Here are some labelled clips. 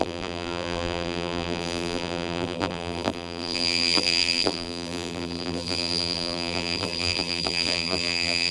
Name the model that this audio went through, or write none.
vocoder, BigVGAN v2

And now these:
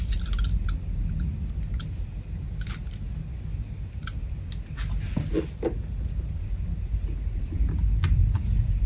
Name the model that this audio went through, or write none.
none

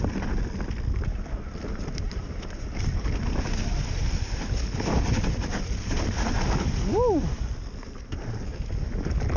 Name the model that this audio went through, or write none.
none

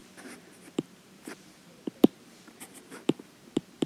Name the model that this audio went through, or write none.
vocoder, BigVGAN v2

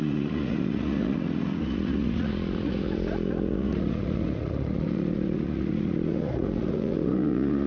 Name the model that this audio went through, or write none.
vocoder, Vocos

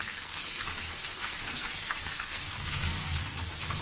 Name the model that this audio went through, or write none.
codec, SNAC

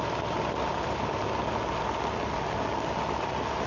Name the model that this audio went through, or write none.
none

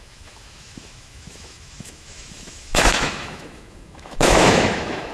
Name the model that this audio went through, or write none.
autoencoder, DAC-VAE